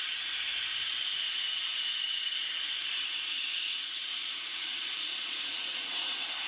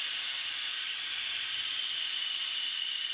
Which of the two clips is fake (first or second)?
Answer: first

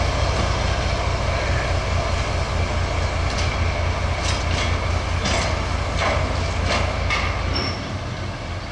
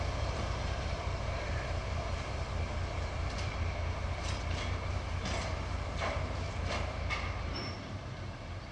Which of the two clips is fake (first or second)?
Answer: second